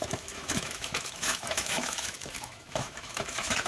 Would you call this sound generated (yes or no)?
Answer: yes